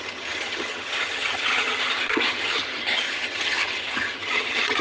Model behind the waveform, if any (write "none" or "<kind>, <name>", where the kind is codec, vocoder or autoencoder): vocoder, HiFi-GAN